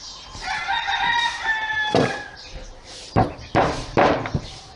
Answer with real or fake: fake